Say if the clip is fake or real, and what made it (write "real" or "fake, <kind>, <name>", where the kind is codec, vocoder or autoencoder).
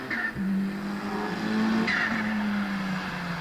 real